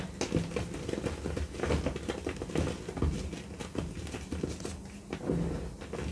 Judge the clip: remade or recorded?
recorded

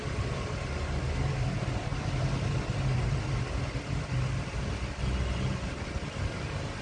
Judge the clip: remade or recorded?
recorded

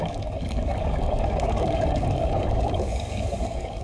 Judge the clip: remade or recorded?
remade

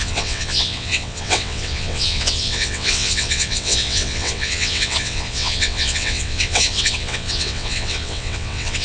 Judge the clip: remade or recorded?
remade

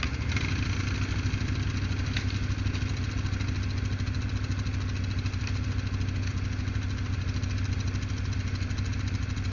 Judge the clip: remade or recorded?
recorded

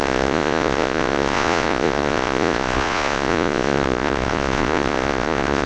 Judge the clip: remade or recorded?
remade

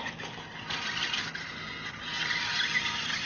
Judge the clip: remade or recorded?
recorded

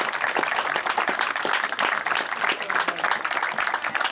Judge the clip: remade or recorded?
recorded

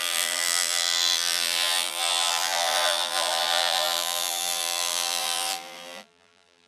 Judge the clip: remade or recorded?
remade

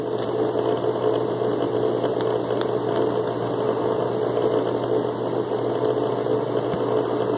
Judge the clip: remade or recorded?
recorded